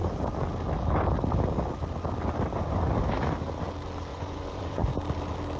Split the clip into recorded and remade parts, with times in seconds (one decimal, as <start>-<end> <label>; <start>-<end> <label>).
0.0-4.1 recorded; 4.1-4.9 remade; 4.9-5.6 recorded